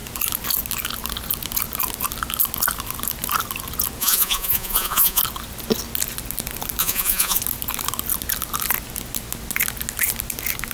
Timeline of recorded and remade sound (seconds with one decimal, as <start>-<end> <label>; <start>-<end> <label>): 0.0-4.0 recorded; 4.0-5.2 remade; 5.2-6.8 recorded; 6.8-7.4 remade; 7.4-10.7 recorded